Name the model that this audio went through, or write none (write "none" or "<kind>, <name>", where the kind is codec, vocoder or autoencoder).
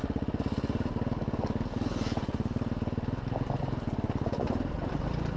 none